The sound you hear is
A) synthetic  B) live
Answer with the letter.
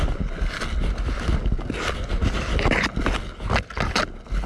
B